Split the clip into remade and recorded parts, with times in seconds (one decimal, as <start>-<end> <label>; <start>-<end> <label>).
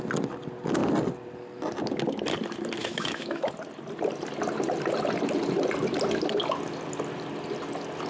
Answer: 0.0-2.8 recorded; 2.8-3.5 remade; 3.5-8.1 recorded